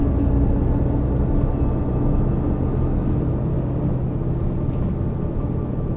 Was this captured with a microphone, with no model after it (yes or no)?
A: yes